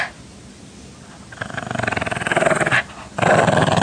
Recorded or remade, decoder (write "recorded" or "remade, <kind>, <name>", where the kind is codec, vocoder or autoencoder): recorded